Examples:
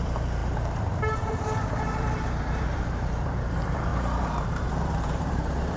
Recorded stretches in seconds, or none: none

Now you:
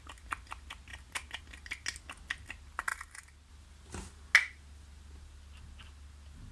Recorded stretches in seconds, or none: 0.0-6.5

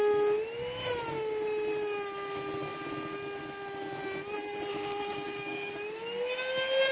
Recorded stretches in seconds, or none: 0.0-4.7; 5.7-6.9

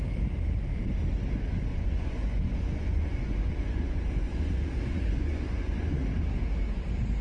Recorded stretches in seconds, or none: 0.0-1.7; 6.0-7.2

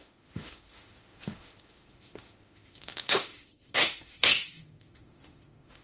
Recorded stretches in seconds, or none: none

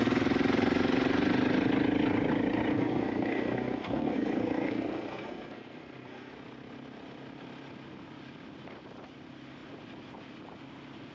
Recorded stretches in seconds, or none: 0.0-2.7; 6.3-11.1

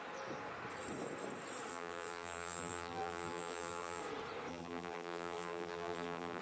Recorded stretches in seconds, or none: 0.0-1.7; 4.0-4.5